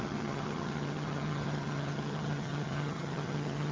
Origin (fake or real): fake